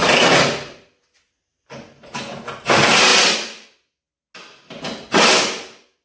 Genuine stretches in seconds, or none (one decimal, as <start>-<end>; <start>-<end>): 0.0-6.0